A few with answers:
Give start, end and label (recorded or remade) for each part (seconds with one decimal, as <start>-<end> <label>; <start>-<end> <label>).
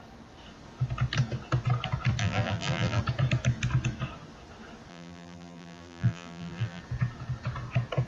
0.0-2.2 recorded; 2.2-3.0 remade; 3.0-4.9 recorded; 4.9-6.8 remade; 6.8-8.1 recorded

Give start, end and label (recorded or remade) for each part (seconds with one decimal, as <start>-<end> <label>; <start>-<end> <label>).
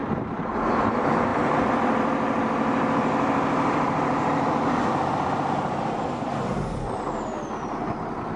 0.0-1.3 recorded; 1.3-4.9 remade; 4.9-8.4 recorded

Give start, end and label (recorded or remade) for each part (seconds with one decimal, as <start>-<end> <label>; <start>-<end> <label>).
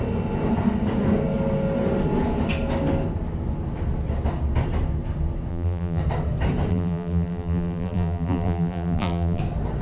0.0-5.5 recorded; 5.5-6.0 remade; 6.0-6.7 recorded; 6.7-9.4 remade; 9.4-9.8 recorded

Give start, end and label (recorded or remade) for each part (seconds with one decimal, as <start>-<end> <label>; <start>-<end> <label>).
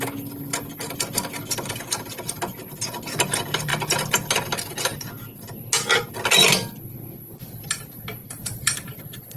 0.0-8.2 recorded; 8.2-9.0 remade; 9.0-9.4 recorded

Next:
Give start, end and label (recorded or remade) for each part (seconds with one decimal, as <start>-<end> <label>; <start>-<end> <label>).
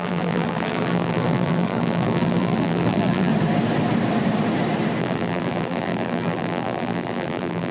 0.0-3.3 remade; 3.3-5.0 recorded; 5.0-7.7 remade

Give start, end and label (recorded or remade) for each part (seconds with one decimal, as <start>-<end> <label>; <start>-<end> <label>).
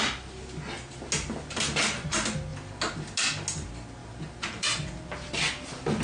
0.0-4.0 recorded; 4.0-4.7 remade; 4.7-6.0 recorded